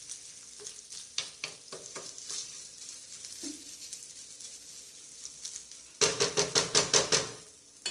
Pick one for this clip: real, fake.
real